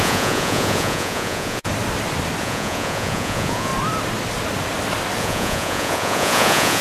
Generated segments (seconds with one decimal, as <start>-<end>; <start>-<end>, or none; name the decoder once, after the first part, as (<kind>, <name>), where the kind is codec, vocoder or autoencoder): 0.0-1.7 (vocoder, Vocos); 2.4-3.7; 5.2-6.8